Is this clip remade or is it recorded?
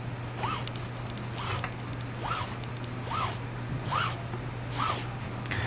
recorded